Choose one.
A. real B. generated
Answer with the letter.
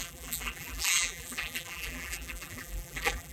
B